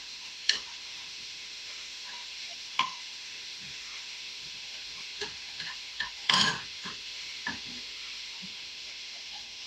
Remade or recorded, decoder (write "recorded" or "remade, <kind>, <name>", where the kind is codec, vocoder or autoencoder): remade, autoencoder, DAC-VAE